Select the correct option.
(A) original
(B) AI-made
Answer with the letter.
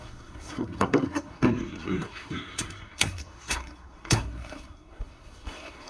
B